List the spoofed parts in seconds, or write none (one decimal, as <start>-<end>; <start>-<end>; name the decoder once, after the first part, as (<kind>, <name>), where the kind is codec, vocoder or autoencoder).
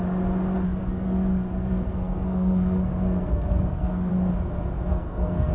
0.8-4.1 (codec, SNAC); 4.9-5.5